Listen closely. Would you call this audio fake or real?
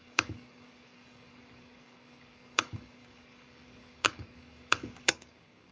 fake